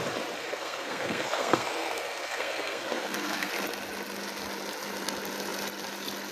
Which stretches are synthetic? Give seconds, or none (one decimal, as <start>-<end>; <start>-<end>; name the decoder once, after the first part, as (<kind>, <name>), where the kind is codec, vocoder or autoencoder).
0.4-3.5 (codec, SNAC)